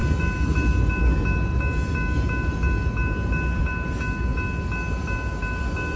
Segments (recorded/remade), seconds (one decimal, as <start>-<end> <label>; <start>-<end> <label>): 0.0-6.0 recorded